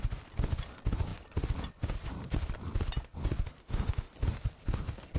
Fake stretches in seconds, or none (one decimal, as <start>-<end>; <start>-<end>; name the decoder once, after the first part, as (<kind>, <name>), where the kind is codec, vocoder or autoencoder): 3.6-4.1 (autoencoder, DAC-VAE)

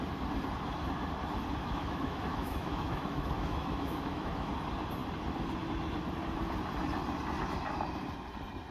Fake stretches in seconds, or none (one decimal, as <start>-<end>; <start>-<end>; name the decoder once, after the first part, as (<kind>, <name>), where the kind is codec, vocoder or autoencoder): 1.6-4.5 (autoencoder, DAC-VAE)

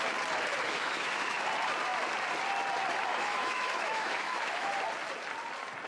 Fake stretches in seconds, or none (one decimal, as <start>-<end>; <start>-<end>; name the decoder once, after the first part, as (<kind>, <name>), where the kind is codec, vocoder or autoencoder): 0.5-1.4 (autoencoder, DAC-VAE); 3.1-4.7

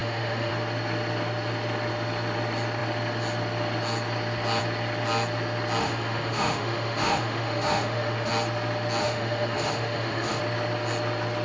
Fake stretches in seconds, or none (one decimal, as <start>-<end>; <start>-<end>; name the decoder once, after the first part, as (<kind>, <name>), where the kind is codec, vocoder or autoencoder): 0.0-0.5 (autoencoder, DAC-VAE); 5.8-8.3; 9.0-10.4

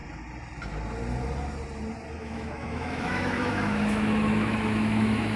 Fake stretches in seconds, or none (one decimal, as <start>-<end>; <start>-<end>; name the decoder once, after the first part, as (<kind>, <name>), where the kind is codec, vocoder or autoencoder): 2.2-5.4 (autoencoder, DAC-VAE)